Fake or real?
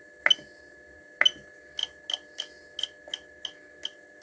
real